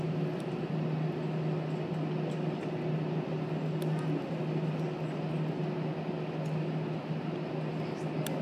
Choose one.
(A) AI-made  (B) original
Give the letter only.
B